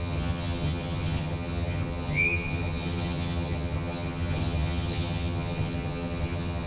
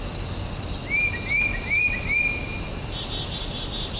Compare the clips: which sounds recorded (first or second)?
second